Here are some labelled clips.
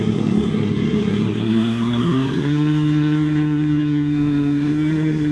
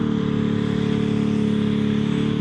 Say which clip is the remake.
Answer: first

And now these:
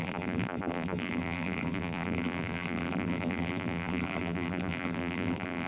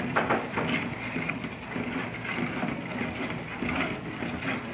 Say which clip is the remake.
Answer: first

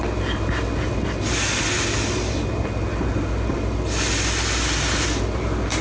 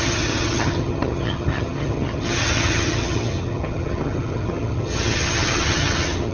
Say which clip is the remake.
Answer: second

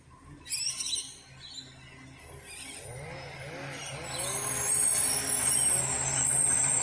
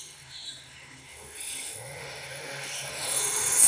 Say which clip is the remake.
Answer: second